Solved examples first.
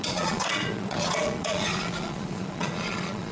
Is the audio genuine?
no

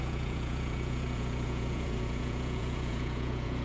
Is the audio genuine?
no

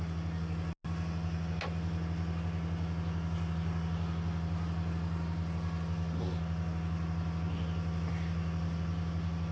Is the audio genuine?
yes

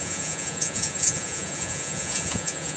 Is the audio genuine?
no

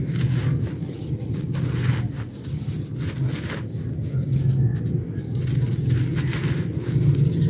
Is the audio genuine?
yes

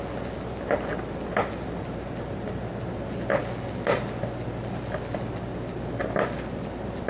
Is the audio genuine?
yes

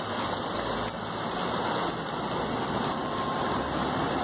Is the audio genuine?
yes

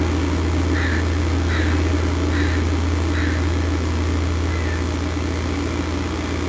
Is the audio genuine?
yes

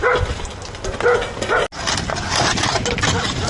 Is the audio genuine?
yes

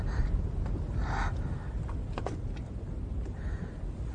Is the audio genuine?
yes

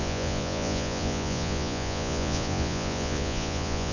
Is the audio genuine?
no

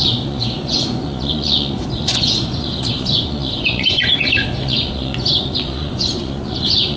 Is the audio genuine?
no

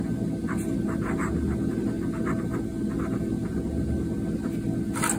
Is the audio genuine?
yes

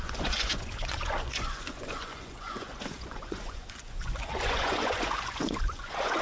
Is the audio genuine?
no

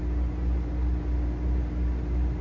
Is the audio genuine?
yes